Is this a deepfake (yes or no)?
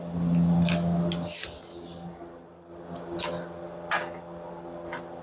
no